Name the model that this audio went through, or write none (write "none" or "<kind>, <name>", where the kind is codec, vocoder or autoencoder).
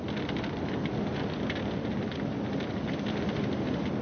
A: none